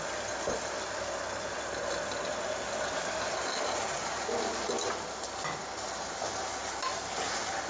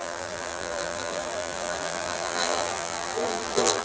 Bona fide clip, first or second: first